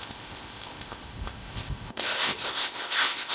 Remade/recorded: remade